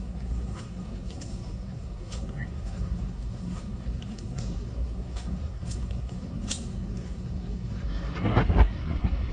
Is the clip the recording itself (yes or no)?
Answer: no